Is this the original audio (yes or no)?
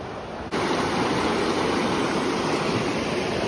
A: yes